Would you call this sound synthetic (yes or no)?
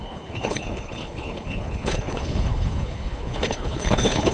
yes